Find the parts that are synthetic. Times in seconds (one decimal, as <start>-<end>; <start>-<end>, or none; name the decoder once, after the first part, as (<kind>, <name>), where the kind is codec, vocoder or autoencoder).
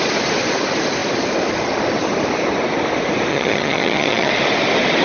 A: 3.3-4.3 (vocoder, HiFi-GAN)